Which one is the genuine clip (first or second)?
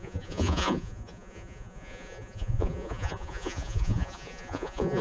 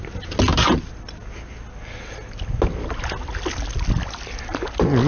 second